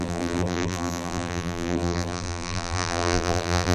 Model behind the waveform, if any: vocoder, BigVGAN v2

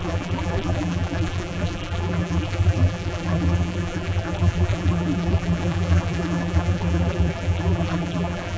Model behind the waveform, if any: vocoder, BigVGAN v2